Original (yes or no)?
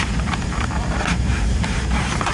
no